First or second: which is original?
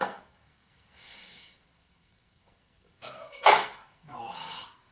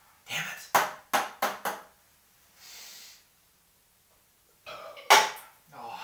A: second